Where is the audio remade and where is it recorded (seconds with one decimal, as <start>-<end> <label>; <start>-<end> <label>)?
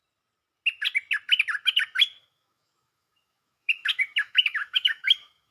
0.0-2.2 recorded; 2.2-5.5 remade